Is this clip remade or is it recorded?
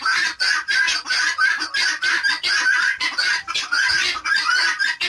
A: recorded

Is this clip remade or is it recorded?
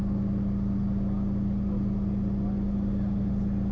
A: recorded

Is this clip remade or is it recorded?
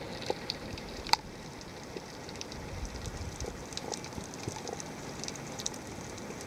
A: recorded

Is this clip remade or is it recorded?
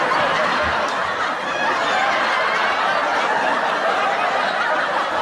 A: recorded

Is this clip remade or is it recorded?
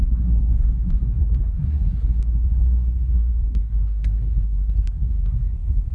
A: remade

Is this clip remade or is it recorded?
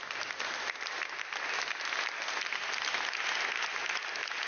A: recorded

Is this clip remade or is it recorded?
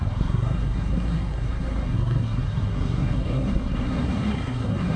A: remade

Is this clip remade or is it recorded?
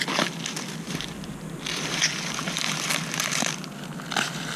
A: recorded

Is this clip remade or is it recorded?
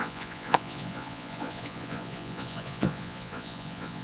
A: remade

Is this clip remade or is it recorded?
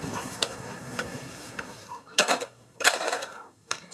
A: remade